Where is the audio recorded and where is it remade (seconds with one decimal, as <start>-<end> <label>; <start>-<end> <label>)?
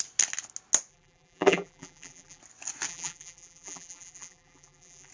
0.0-0.9 recorded; 0.9-2.4 remade; 2.4-2.9 recorded; 2.9-5.1 remade